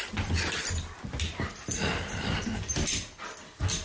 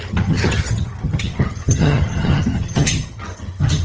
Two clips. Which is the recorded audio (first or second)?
first